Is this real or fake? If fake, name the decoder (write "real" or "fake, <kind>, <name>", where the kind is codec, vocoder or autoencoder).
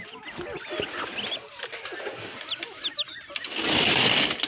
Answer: real